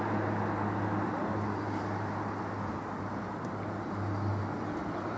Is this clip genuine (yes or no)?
yes